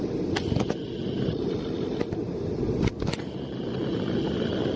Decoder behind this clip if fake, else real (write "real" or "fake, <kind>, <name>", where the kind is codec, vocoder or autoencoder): real